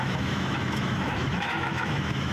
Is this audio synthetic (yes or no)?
yes